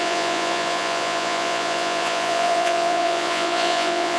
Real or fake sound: fake